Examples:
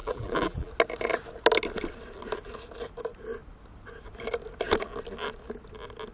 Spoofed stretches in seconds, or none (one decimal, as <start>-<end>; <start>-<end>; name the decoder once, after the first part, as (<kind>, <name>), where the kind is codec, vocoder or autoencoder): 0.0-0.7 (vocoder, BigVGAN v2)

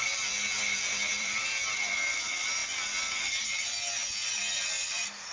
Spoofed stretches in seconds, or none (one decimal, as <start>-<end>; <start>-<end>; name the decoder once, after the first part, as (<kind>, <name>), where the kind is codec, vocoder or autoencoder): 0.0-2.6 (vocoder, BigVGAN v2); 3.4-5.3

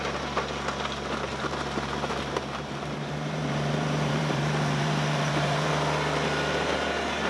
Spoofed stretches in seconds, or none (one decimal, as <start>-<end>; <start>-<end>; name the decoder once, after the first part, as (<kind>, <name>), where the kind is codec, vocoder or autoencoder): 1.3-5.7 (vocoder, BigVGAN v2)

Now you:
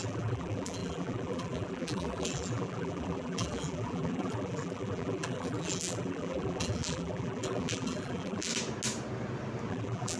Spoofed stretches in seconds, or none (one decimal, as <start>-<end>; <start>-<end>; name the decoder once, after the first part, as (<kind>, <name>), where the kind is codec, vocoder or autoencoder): 0.0-8.5 (vocoder, BigVGAN v2); 9.7-10.2

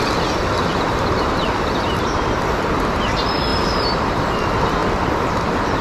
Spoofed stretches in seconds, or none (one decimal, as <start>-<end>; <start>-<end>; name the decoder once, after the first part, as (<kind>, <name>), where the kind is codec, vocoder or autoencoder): 0.7-1.9 (vocoder, BigVGAN v2); 3.5-4.3

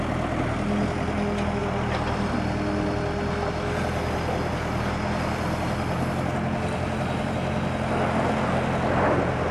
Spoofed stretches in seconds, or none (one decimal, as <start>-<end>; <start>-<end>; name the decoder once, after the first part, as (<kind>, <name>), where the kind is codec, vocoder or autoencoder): 1.6-2.3 (vocoder, BigVGAN v2)

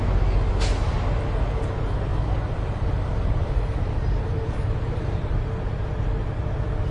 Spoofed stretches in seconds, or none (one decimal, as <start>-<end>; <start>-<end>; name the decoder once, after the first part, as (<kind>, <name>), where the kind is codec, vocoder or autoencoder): 2.1-5.4 (vocoder, BigVGAN v2)

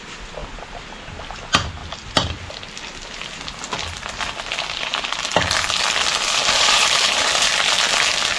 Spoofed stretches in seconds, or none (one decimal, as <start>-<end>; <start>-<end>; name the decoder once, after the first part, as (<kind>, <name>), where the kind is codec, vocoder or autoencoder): 6.4-7.5 (vocoder, BigVGAN v2)